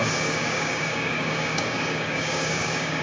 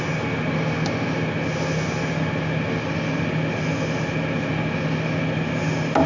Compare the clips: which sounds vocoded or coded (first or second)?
first